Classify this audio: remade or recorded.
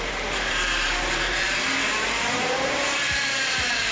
remade